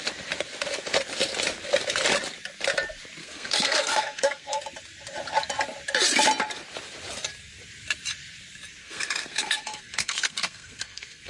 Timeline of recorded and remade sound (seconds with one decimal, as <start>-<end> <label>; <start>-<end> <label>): 0.0-3.2 recorded; 3.2-4.6 remade; 4.6-8.8 recorded; 8.8-11.3 remade